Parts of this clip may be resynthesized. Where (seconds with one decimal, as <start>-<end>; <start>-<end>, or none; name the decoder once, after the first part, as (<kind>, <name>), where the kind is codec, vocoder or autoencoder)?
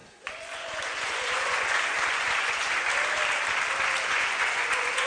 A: 0.0-2.9 (vocoder, Vocos); 4.1-5.1